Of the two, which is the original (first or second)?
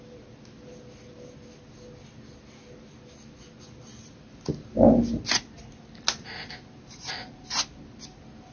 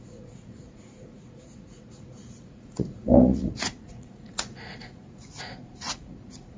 first